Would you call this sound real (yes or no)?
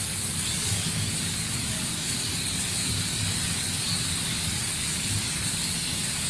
no